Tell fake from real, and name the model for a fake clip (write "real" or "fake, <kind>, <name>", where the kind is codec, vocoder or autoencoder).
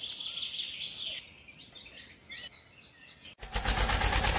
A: real